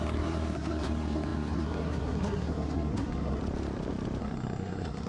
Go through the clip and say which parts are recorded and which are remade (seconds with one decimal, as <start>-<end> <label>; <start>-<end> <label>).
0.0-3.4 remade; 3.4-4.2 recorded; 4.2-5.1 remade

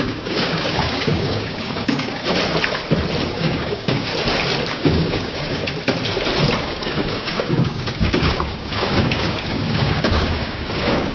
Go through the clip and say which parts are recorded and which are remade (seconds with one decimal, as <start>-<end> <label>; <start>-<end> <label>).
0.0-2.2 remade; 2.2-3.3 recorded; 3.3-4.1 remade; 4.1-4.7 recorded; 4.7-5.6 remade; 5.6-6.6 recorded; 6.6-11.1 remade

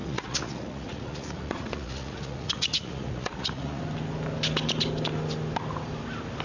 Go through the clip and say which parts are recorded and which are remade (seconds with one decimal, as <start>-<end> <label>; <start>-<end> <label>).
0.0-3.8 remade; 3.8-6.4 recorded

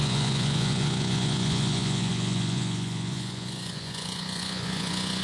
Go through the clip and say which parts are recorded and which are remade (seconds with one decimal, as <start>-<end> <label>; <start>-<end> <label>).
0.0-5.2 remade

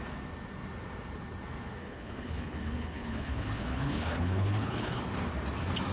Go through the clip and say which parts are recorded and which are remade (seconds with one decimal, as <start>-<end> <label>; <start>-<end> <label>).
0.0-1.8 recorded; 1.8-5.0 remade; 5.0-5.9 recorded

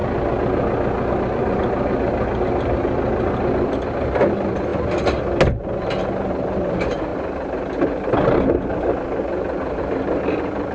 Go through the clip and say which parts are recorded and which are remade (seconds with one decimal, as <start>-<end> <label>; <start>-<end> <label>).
0.0-10.7 recorded

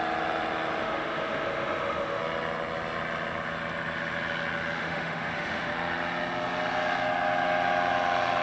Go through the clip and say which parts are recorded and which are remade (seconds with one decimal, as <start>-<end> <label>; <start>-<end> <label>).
0.0-0.8 recorded; 0.8-2.2 remade; 2.2-4.8 recorded; 4.8-5.7 remade; 5.7-8.4 recorded

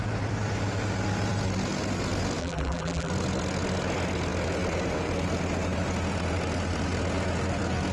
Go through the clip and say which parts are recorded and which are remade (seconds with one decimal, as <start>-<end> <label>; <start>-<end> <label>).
0.0-2.4 recorded; 2.4-3.1 remade; 3.1-7.9 recorded